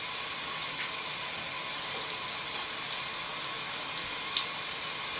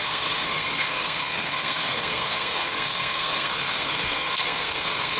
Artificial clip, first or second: second